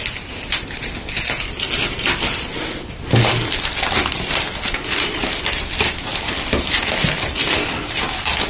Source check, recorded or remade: recorded